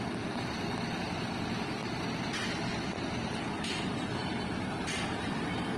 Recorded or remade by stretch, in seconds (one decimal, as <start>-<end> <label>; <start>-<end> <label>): 0.0-5.8 recorded